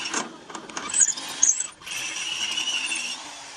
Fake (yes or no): no